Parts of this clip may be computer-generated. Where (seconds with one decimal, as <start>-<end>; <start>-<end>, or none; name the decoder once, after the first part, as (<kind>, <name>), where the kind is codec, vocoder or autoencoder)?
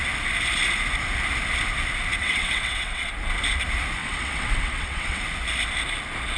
2.2-3.1 (vocoder, WaveNeXt); 4.0-5.2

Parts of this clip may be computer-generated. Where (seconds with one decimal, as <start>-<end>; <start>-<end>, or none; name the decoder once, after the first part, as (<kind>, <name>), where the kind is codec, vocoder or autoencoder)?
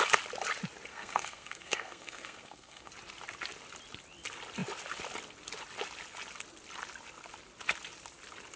0.9-2.9 (codec, SNAC)